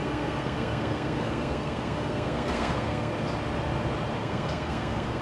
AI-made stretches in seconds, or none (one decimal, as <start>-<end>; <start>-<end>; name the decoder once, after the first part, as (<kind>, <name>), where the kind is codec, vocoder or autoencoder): 0.0-3.1 (codec, SNAC); 4.2-5.2